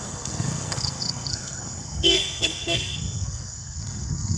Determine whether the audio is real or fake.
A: fake